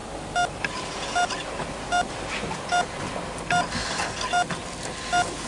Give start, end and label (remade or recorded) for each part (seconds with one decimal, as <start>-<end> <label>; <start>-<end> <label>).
0.0-5.5 recorded